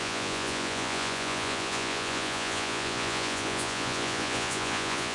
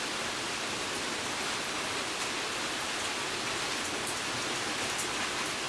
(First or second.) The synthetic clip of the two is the first